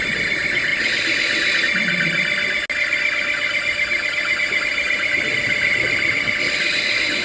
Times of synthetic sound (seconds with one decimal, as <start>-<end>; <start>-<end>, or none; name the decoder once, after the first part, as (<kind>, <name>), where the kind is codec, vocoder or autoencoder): 4.7-6.2 (vocoder, BigVGAN v2)